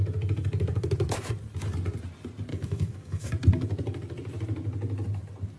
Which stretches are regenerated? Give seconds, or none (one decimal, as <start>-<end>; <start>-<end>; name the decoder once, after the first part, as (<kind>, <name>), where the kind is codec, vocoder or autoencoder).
2.5-3.3 (codec, SNAC)